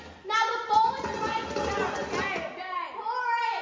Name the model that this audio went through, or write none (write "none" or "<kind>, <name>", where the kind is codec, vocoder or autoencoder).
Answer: none